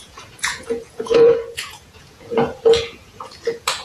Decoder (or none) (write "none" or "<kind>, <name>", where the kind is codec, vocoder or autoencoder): vocoder, Vocos